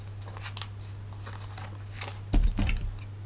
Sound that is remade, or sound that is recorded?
recorded